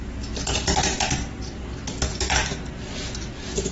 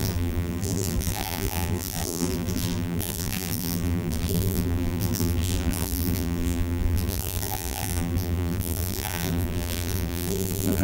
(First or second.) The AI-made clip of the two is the second